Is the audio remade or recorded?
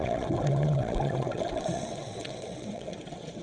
remade